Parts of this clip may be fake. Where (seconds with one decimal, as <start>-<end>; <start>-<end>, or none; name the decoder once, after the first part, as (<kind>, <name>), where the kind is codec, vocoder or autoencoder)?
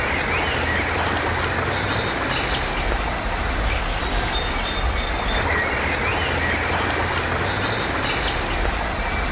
none